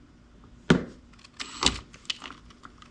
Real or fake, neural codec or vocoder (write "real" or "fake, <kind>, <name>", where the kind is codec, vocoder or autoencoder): real